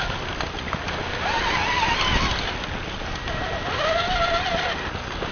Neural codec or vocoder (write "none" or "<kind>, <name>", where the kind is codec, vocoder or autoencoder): none